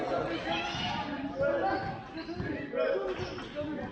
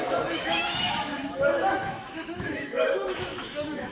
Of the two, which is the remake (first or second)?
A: second